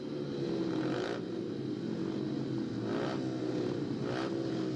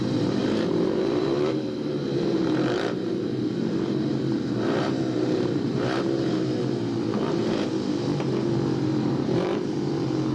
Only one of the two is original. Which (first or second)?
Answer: first